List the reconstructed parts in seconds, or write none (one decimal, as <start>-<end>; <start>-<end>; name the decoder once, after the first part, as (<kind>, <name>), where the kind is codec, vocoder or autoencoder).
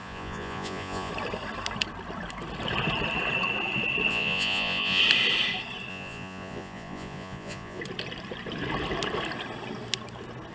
0.0-1.1 (vocoder, Vocos); 4.1-5.0; 5.9-7.8